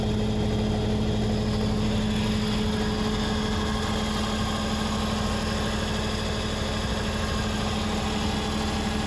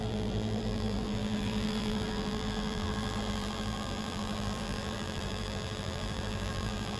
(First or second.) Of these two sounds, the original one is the first